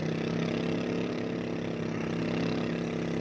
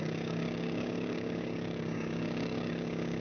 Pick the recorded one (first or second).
first